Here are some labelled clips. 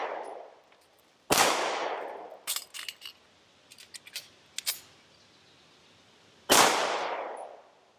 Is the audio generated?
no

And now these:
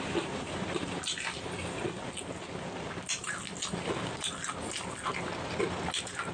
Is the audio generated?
no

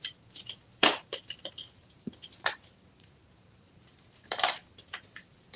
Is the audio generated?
yes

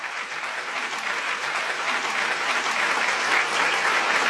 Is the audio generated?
no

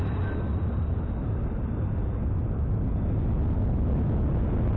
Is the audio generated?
no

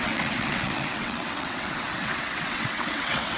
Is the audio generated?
yes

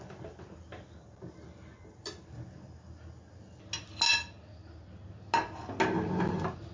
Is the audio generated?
no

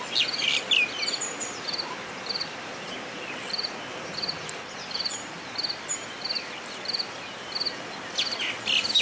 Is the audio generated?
no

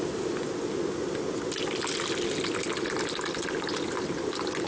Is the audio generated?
no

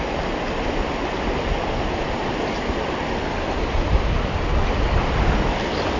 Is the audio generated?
no